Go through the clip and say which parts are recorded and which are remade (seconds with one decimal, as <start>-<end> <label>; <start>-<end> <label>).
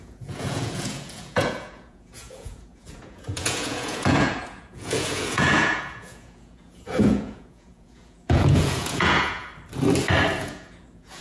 0.0-9.5 remade; 9.5-10.4 recorded; 10.4-11.2 remade